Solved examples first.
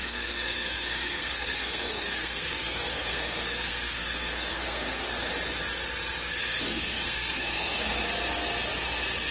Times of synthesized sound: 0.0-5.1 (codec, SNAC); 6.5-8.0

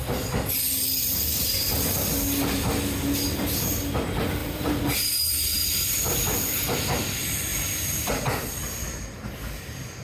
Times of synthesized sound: 4.4-5.3 (vocoder, BigVGAN v2); 7.5-8.1

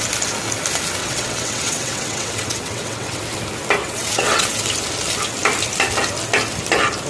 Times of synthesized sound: 1.0-3.2 (vocoder, WaveNeXt); 3.8-4.6

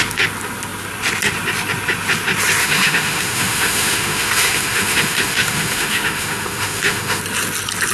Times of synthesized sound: 2.6-7.2 (autoencoder, DAC-VAE)

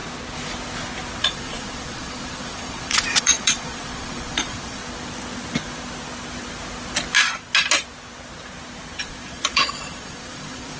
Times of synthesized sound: 1.2-4.8 (vocoder, Vocos); 9.0-10.8

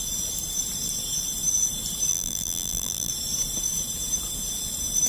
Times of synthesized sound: 2.1-3.1 (vocoder, BigVGAN v2)

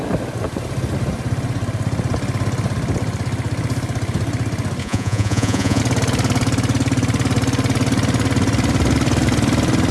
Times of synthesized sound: 4.8-5.8 (vocoder, Vocos)